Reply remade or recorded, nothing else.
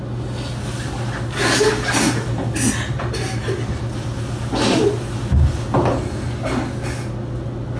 recorded